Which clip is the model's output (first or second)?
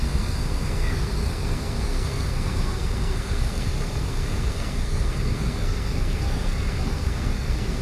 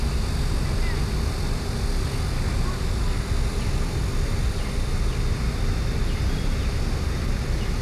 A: first